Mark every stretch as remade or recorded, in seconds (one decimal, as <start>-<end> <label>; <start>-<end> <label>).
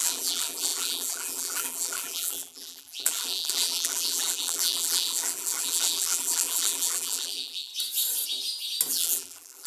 0.0-7.7 remade; 7.7-8.9 recorded; 8.9-9.7 remade